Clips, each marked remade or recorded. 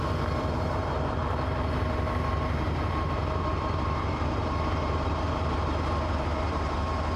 remade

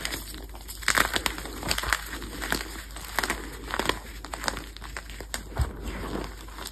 recorded